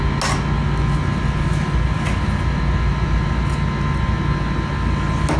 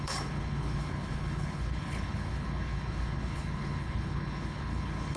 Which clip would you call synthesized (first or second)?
second